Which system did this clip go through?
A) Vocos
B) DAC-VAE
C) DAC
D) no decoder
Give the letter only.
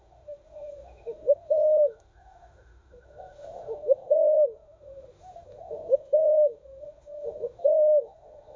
B